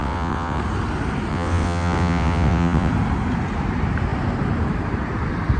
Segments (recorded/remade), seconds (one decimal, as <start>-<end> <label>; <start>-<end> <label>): 0.0-0.6 remade; 0.6-1.3 recorded; 1.3-2.9 remade; 2.9-5.6 recorded